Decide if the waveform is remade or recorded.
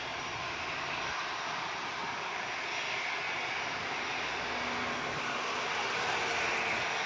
recorded